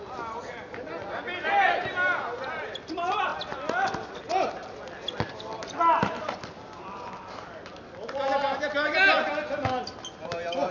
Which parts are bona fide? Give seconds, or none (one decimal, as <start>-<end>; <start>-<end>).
0.0-10.7